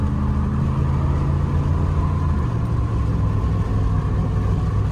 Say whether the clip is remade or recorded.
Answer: recorded